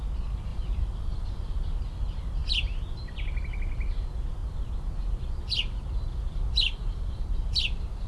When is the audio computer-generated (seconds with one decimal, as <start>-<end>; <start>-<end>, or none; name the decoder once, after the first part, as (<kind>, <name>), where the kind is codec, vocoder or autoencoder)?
0.5-1.8 (vocoder, BigVGAN v2)